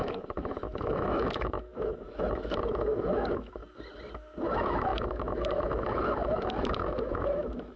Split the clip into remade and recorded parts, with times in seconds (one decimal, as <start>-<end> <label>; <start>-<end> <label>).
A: 0.0-3.6 remade; 3.6-4.4 recorded; 4.4-7.8 remade